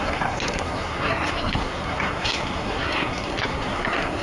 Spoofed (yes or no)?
yes